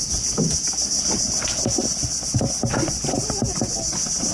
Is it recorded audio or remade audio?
recorded